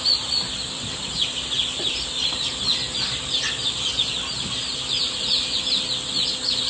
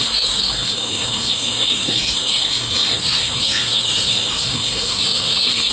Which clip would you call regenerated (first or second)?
second